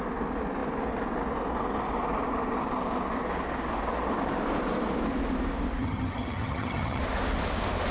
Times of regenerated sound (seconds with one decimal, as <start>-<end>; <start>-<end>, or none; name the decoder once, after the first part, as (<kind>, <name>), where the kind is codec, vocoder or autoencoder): 5.8-7.0 (vocoder, HiFi-GAN)